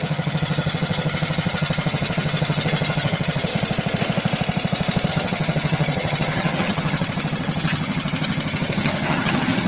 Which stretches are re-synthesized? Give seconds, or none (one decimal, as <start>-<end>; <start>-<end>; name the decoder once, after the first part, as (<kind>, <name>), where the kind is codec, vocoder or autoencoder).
0.0-3.5 (vocoder, HiFi-GAN); 5.1-9.7